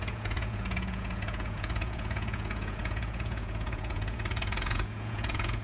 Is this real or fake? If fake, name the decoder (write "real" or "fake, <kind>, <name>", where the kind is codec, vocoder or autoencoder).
fake, vocoder, Vocos